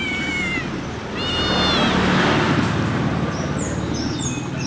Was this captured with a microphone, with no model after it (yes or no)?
yes